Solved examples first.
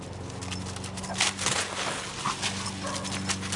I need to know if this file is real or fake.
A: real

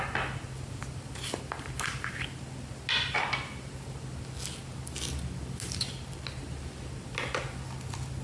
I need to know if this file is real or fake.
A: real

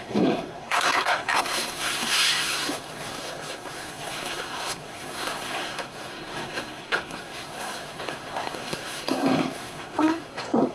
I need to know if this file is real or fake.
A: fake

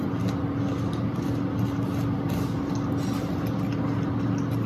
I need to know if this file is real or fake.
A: real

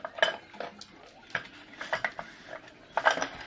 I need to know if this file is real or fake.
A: real